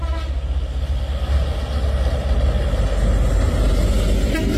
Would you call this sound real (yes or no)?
yes